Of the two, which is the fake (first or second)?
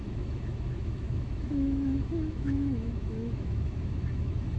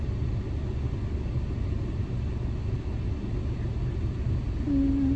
first